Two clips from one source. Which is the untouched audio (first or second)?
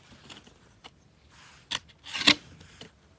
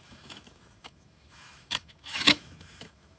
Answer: first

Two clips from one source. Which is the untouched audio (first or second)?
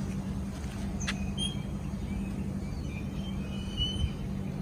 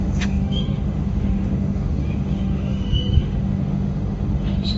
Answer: first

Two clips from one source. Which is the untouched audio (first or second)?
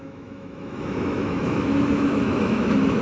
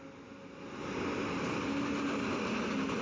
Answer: second